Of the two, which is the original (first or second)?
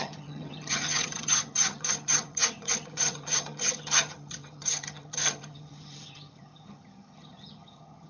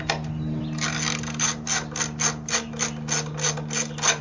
second